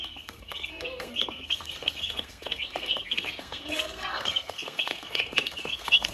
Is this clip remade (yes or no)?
yes